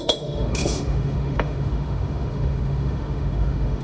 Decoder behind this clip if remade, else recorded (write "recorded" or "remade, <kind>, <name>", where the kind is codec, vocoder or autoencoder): remade, autoencoder, DAC-VAE